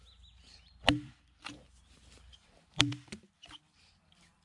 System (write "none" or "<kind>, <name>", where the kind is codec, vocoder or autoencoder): vocoder, BigVGAN v2